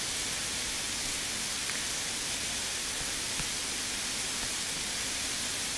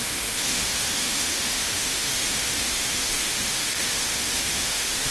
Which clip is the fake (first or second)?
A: second